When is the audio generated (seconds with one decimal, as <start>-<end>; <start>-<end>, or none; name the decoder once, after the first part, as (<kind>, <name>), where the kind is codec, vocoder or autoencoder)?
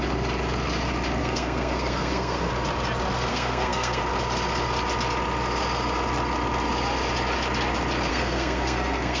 1.2-2.5 (codec, SNAC); 3.3-4.0; 8.1-9.2